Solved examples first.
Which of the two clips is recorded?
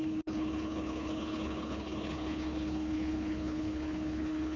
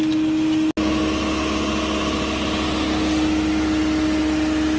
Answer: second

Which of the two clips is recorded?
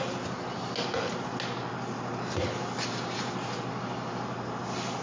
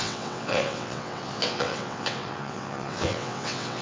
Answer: first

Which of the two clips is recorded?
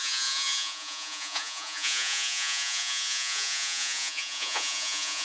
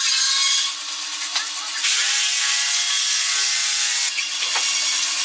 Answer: second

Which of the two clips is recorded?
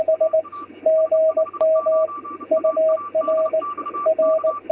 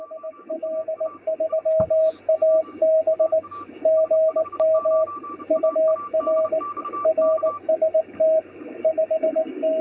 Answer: first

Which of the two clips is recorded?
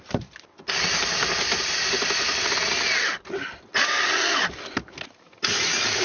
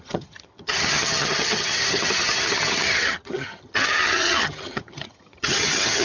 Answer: first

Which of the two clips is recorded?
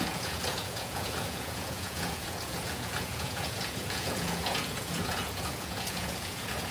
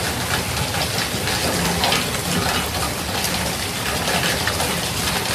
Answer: second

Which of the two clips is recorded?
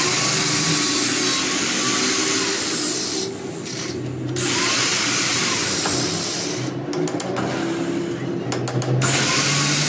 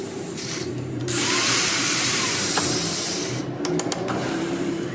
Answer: first